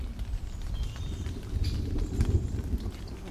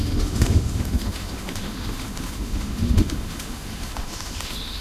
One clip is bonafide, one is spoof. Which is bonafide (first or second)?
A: first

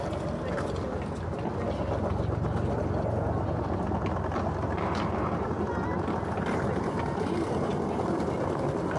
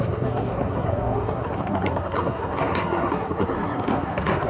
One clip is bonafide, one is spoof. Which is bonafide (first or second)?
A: first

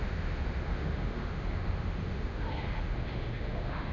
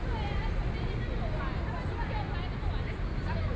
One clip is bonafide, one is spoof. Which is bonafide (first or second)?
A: second